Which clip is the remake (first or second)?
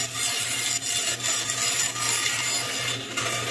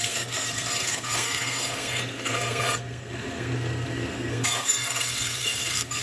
second